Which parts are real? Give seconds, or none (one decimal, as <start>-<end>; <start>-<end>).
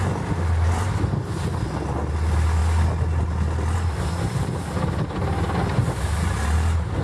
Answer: 0.0-7.0